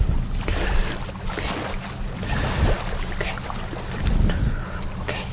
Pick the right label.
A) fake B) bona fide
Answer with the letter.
B